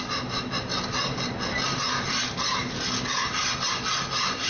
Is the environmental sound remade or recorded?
recorded